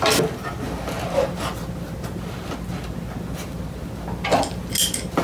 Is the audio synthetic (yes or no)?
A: no